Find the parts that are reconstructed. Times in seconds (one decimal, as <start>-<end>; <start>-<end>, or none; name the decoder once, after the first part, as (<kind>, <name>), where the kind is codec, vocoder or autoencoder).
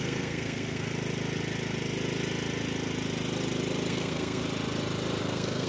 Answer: 0.0-0.9 (codec, SNAC); 3.9-4.4; 5.2-5.7